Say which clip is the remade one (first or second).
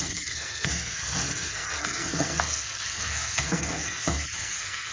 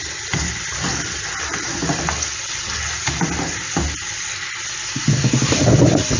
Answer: first